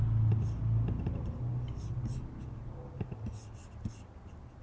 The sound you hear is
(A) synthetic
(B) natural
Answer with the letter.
B